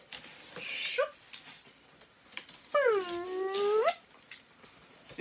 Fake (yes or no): no